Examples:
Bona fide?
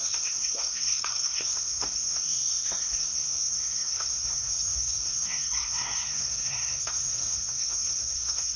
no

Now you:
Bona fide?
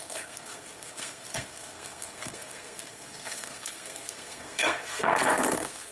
no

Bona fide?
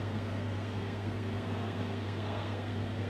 no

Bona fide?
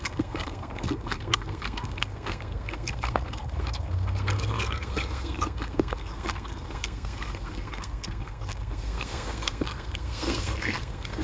no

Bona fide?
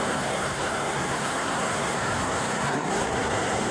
no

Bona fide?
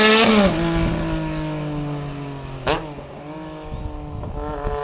yes